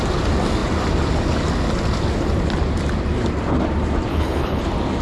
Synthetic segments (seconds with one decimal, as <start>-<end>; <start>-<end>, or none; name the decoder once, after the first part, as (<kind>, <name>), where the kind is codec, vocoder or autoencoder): 4.1-4.6 (codec, HILCodec)